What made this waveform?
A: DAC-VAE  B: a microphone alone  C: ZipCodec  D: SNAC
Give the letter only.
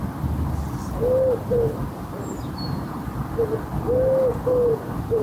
B